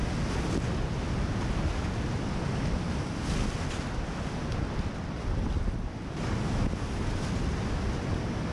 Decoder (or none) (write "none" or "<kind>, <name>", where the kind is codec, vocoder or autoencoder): none